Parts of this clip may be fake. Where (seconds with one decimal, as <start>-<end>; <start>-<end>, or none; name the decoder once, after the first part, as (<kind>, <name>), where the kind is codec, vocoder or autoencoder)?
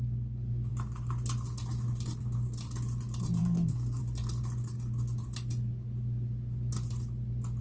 3.4-4.0 (codec, SNAC)